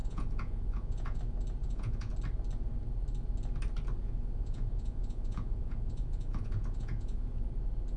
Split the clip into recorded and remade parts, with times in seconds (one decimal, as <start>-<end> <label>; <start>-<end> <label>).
0.0-1.2 remade; 1.2-1.6 recorded; 1.6-2.1 remade; 2.1-4.0 recorded; 4.0-7.4 remade; 7.4-8.0 recorded

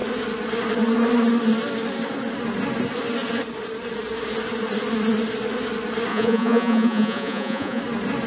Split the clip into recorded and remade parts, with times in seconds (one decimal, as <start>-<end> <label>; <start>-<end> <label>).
0.0-6.1 recorded; 6.1-7.8 remade; 7.8-8.3 recorded

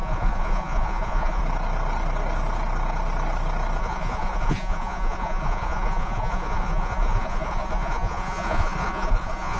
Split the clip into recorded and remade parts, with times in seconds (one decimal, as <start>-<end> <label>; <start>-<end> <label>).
0.0-1.4 remade; 1.4-3.8 recorded; 3.8-9.6 remade

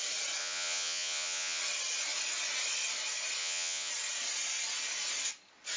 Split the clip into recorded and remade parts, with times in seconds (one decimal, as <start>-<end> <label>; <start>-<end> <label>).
0.0-0.4 recorded; 0.4-1.6 remade; 1.6-3.4 recorded; 3.4-3.9 remade; 3.9-5.8 recorded

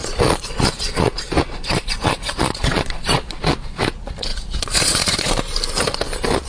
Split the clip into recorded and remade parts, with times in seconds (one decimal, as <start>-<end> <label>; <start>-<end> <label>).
0.0-3.9 remade; 3.9-4.3 recorded; 4.3-5.3 remade; 5.3-6.5 recorded

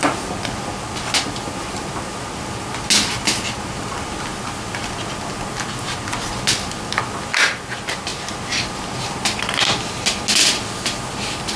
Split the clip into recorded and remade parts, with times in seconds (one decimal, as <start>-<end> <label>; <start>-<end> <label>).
0.0-11.6 recorded